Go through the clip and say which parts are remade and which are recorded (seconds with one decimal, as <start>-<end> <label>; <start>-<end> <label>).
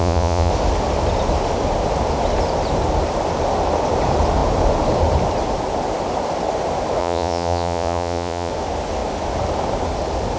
0.0-0.5 remade; 0.5-7.0 recorded; 7.0-8.5 remade; 8.5-10.4 recorded